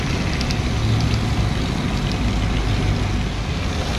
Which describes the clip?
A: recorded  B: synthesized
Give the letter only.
A